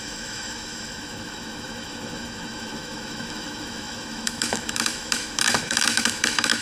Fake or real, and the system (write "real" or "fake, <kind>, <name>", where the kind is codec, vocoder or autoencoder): fake, autoencoder, DAC-VAE